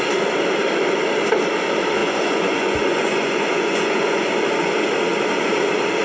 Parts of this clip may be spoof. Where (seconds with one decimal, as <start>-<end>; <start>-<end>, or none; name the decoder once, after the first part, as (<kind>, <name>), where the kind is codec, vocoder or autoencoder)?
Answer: 2.0-4.3 (vocoder, Vocos)